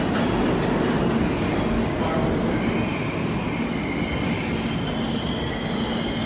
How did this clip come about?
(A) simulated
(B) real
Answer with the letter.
B